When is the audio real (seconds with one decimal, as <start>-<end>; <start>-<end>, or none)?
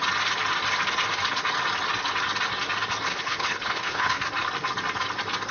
0.0-3.1; 4.2-5.5